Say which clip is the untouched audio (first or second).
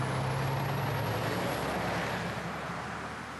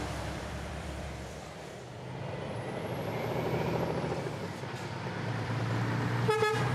first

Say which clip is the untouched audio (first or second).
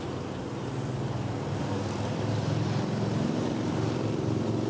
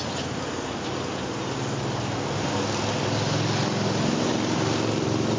second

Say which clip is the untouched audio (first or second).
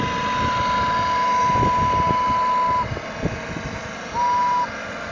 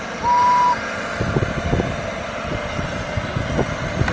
first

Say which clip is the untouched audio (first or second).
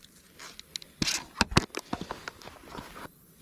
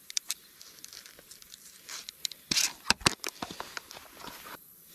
first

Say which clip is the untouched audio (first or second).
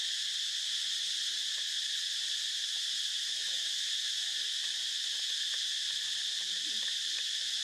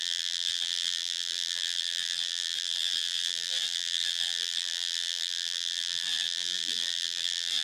first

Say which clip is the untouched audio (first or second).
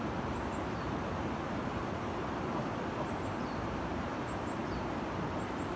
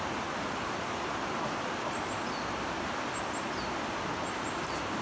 second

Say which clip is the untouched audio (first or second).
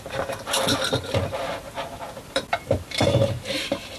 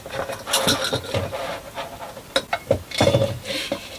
second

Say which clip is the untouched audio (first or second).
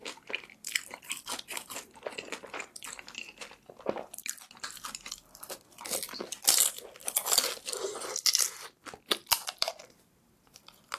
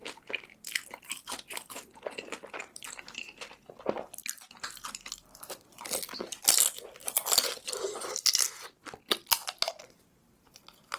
second